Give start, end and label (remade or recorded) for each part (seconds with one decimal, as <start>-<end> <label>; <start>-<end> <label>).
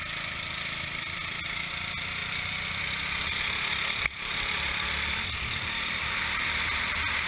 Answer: 0.0-7.3 remade